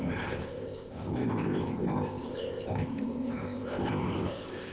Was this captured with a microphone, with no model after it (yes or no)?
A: no